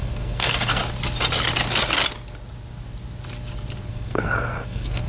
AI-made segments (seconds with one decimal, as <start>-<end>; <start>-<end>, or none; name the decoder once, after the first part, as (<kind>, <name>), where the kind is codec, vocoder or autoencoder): 0.0-0.8 (codec, SNAC); 3.9-5.1